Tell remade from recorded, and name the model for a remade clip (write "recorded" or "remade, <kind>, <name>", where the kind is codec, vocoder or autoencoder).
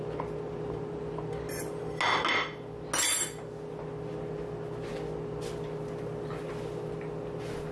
recorded